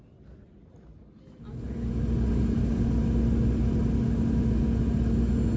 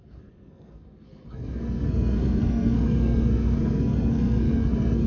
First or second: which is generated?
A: second